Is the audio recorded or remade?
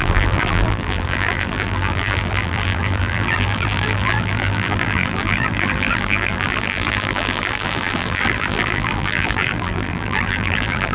remade